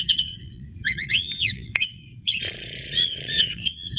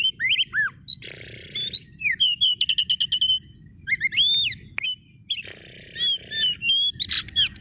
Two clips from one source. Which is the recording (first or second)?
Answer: second